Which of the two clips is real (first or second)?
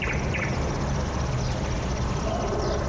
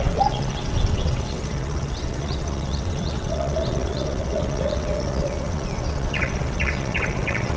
first